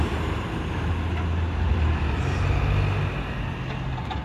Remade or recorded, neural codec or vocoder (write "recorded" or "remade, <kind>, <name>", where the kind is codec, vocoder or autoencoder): recorded